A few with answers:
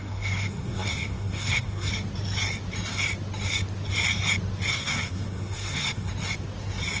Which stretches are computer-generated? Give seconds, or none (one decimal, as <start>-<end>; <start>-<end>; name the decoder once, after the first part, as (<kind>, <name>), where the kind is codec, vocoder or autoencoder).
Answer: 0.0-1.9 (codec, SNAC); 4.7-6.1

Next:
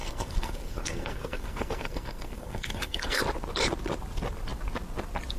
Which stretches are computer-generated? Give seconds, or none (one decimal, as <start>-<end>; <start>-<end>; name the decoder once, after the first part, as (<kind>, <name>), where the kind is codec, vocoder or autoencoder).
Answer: 0.0-3.2 (codec, SNAC)

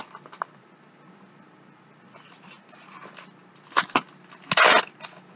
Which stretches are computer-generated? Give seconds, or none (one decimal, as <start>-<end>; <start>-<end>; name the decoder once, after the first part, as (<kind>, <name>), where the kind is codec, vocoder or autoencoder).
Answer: none

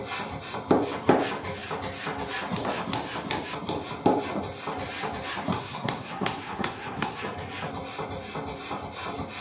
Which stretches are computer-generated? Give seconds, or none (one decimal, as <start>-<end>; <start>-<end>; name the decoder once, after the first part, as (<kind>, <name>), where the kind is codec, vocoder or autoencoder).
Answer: 5.6-7.1 (codec, SNAC)

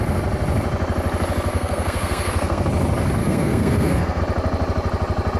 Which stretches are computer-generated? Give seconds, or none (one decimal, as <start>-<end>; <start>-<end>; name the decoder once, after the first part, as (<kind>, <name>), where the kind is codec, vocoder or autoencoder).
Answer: 1.5-2.7 (codec, SNAC); 3.2-4.2